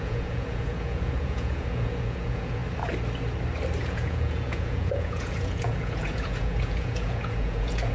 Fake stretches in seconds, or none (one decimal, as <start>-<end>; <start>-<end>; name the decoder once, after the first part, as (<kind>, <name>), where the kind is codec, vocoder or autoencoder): 0.0-2.6 (vocoder, Vocos); 3.8-7.9